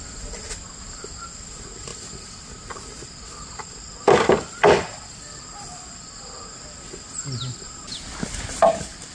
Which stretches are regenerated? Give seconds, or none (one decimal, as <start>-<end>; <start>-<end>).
none